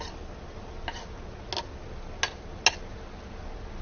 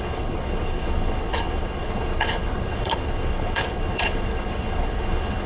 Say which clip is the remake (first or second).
second